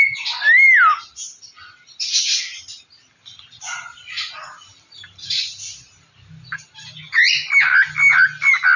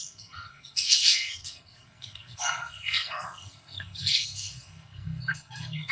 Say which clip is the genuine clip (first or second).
first